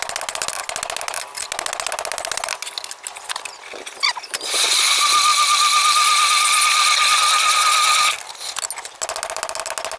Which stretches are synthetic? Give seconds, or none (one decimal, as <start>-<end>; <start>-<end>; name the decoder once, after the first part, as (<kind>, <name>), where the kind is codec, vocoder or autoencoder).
none